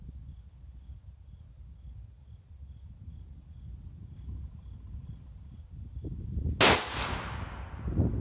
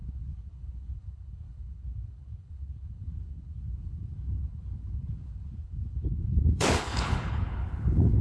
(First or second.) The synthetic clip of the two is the second